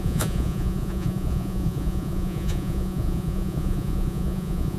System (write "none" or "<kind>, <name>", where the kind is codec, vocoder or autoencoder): vocoder, Vocos